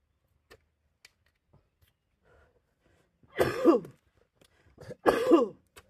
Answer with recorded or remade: recorded